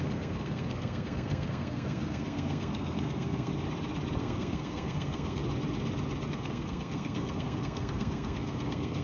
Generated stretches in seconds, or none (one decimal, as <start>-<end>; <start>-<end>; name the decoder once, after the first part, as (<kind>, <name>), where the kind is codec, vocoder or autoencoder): 0.0-3.5 (codec, SNAC); 4.2-5.4; 6.3-9.0